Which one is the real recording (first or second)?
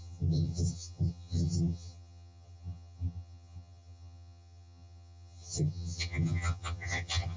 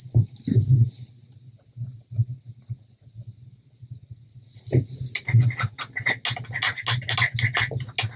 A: second